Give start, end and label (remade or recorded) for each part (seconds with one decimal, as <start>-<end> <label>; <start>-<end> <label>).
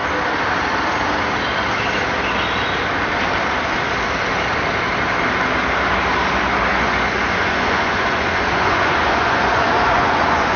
0.0-6.7 recorded; 6.7-10.6 remade